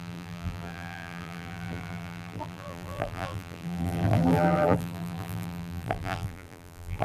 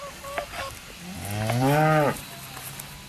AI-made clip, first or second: first